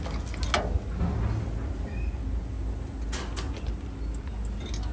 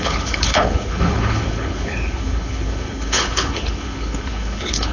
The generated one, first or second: second